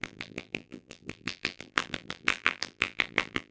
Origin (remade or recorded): remade